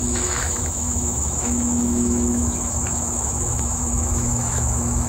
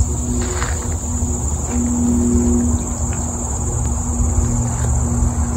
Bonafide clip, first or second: second